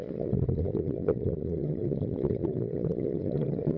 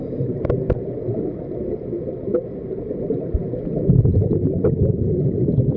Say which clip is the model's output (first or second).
first